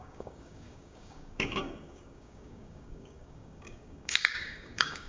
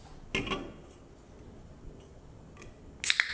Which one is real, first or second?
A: second